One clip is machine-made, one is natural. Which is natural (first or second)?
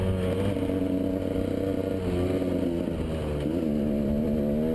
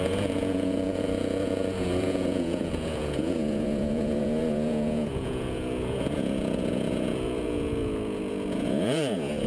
first